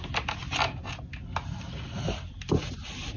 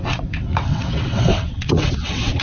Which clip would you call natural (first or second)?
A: first